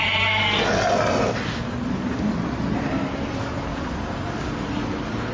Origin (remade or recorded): recorded